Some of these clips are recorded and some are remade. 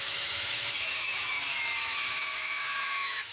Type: remade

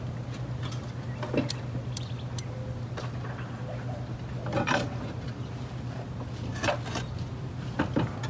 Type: recorded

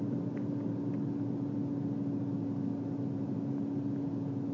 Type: recorded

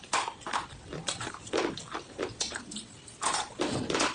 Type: remade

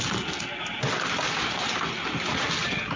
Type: recorded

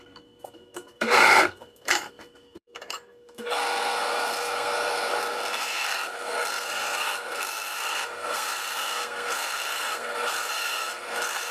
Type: remade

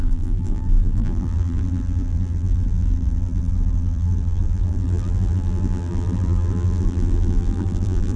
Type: remade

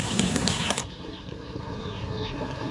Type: remade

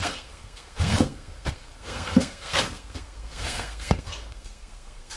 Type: remade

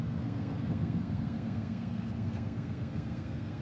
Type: remade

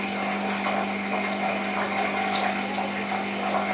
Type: recorded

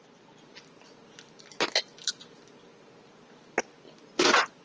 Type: recorded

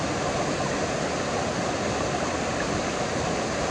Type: recorded